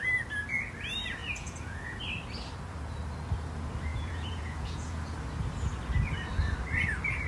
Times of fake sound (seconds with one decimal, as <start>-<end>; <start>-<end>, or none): 1.2-2.0; 3.9-5.0

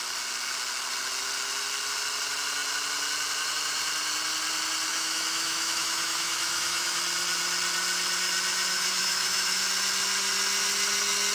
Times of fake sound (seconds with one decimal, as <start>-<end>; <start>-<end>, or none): 4.9-7.0; 8.7-9.6

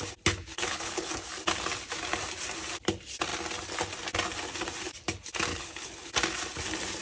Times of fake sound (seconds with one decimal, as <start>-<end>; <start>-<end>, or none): 0.5-1.1; 5.5-6.1

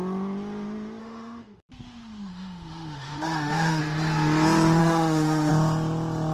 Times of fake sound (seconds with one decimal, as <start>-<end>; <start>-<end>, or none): 1.0-1.7; 2.3-3.8; 4.8-5.5

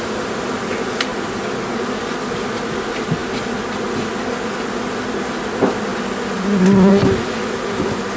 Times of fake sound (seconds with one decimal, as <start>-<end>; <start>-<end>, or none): none

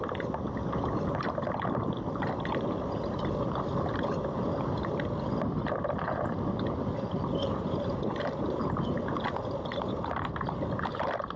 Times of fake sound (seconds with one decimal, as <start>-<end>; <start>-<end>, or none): 7.4-8.6

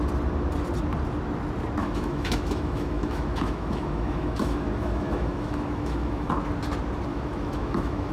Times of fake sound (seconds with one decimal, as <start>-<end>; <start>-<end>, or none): 1.8-6.3; 7.1-8.1

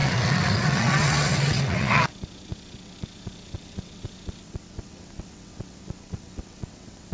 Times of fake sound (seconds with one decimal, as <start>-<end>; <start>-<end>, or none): 0.0-7.1